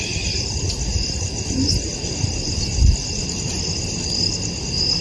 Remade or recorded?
recorded